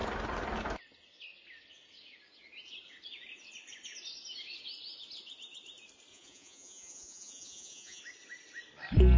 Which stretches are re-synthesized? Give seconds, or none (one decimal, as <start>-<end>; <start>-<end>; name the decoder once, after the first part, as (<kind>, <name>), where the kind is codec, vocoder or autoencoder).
6.1-8.0 (vocoder, Vocos)